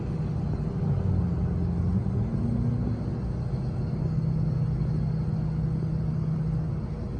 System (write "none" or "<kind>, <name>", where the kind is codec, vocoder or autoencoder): none